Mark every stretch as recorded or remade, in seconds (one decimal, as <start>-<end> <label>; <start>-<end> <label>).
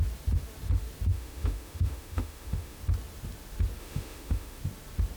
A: 0.0-1.1 recorded; 1.1-2.8 remade; 2.8-3.8 recorded; 3.8-4.6 remade; 4.6-5.2 recorded